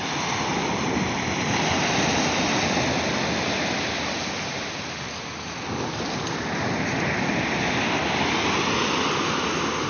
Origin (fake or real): real